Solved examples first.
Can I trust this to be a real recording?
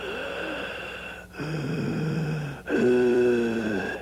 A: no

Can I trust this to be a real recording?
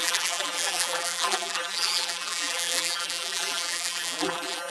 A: no